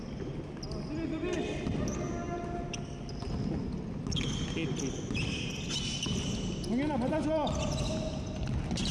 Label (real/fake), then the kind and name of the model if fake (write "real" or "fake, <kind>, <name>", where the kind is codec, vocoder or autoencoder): real